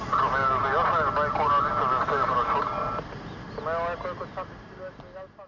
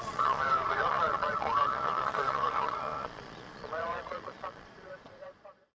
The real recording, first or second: first